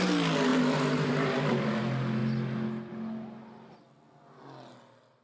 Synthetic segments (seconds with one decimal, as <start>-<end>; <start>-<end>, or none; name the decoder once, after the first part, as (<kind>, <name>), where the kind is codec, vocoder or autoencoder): 0.5-1.4 (vocoder, BigVGAN v2)